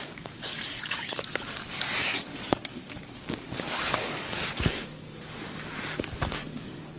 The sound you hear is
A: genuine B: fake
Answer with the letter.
B